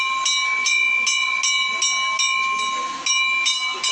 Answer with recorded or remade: recorded